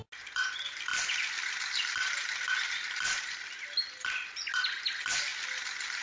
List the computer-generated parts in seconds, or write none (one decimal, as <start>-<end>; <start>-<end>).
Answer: none